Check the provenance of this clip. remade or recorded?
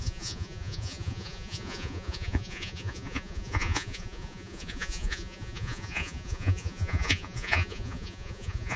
remade